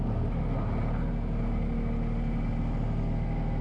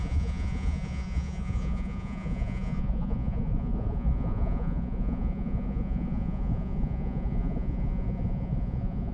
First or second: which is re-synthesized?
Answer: second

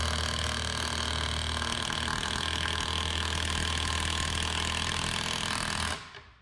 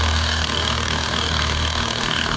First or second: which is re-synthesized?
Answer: second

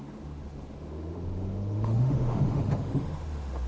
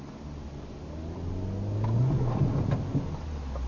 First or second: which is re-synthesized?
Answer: first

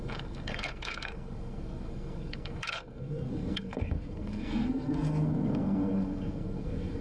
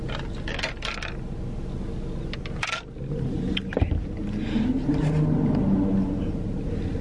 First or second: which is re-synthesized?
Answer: first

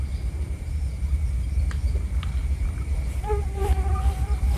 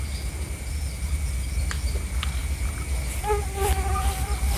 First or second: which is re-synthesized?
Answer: first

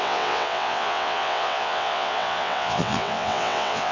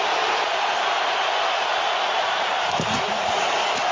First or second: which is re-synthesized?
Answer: first